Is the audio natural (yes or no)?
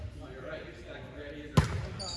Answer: yes